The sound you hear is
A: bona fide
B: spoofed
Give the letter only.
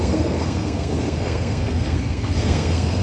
B